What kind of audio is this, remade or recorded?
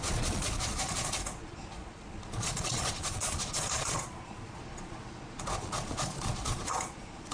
remade